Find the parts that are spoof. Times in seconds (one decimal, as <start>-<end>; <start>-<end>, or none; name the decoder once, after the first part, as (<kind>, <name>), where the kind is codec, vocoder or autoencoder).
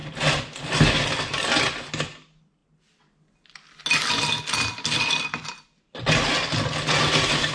none